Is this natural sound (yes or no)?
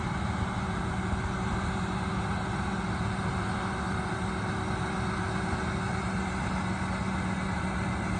yes